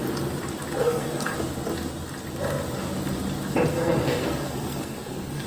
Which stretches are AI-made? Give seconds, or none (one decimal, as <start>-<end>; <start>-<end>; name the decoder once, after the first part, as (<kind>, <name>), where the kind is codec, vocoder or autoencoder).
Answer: 0.8-1.3 (codec, SNAC); 3.7-5.5

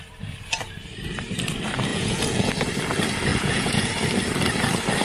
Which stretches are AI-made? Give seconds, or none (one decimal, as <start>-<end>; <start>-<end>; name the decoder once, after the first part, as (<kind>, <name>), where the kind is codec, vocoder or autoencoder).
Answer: 1.9-2.5 (vocoder, Vocos); 3.3-3.9

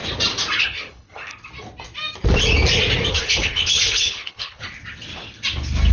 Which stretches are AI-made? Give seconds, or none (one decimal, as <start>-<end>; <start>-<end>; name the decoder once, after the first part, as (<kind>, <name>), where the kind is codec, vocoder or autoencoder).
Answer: 0.6-1.3 (codec, HILCodec); 3.1-4.6

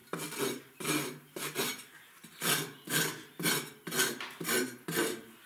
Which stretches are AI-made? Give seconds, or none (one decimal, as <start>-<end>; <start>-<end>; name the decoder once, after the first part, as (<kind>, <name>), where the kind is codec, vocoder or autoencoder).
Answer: 0.6-2.2 (vocoder, BigVGAN v2); 4.6-5.5

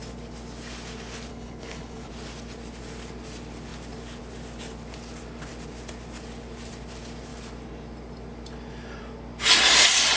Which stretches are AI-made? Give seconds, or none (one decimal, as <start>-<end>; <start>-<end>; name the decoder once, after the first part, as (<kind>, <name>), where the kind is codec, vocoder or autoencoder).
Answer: 1.3-2.1 (codec, HILCodec)